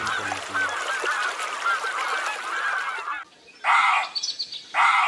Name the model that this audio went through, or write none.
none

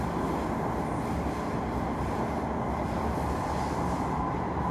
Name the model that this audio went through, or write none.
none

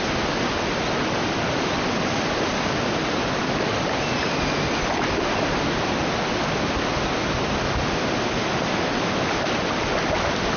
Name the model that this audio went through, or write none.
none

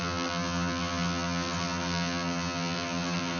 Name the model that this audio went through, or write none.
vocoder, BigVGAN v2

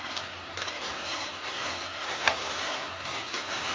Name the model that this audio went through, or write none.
codec, SNAC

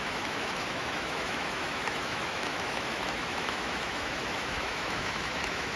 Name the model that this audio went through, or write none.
autoencoder, DAC-VAE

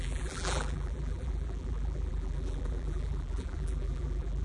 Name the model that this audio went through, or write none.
vocoder, BigVGAN v2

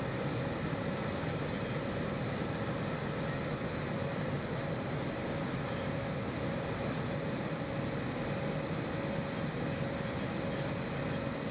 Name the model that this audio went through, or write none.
none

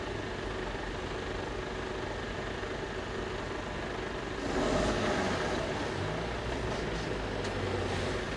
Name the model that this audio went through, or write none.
none